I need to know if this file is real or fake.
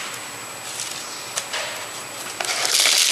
real